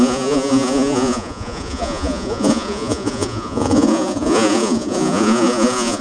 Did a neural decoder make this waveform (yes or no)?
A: yes